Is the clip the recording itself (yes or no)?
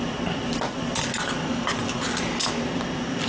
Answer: yes